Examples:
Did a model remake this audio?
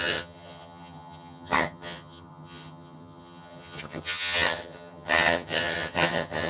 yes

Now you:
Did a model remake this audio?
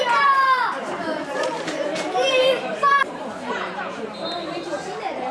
yes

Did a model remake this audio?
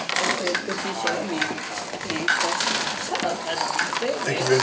no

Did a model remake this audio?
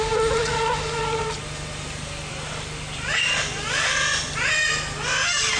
no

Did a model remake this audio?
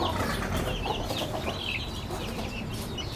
yes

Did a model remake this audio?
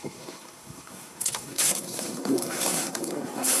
yes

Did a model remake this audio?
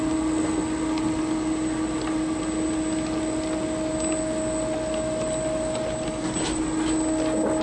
no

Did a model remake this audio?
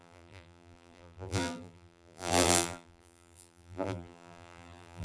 yes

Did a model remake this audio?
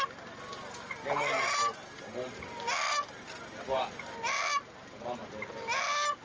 no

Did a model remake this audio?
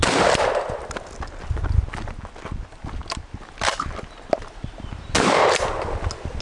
no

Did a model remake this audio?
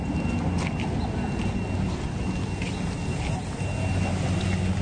no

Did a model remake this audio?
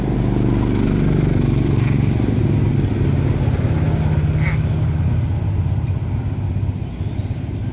no